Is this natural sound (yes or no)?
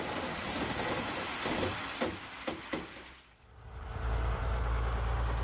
no